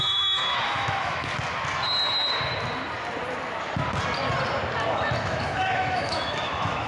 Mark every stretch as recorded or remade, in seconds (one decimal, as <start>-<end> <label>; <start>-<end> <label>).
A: 0.0-1.3 remade; 1.3-5.2 recorded; 5.2-6.9 remade